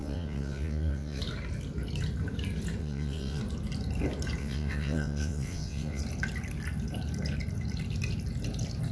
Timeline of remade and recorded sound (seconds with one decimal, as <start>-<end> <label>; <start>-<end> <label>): 0.0-1.2 remade; 1.2-2.8 recorded; 2.8-3.4 remade; 3.4-4.4 recorded; 4.4-6.0 remade; 6.0-8.9 recorded